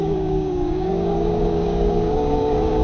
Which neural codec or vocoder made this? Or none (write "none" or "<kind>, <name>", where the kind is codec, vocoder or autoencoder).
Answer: codec, DAC